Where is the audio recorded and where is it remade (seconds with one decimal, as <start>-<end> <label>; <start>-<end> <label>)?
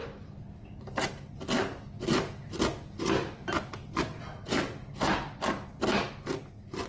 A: 0.0-3.4 recorded; 3.4-5.4 remade; 5.4-6.9 recorded